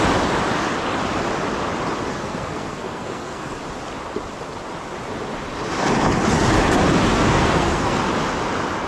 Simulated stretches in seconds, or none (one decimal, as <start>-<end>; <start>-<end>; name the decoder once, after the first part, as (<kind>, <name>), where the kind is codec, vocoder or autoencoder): 2.1-3.6 (codec, SNAC); 7.1-8.0